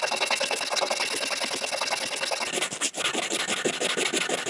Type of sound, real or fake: real